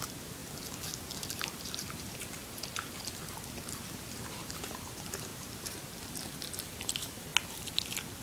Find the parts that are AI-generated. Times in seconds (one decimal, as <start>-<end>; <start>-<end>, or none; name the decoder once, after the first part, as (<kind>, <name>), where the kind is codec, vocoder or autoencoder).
0.0-0.4 (vocoder, BigVGAN v2); 1.3-2.4; 4.2-7.3